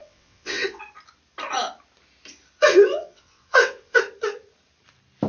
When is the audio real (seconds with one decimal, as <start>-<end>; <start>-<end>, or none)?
0.8-2.6; 4.0-5.3